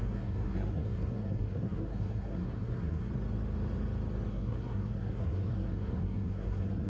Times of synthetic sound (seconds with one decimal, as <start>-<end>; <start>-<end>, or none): 0.0-3.1; 4.3-6.9